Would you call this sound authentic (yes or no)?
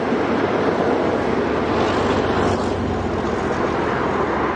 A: yes